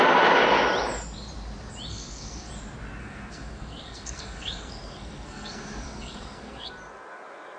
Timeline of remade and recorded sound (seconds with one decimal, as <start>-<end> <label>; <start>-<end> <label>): 0.0-1.9 recorded; 1.9-2.5 remade; 2.5-3.0 recorded; 3.0-6.7 remade; 6.7-7.6 recorded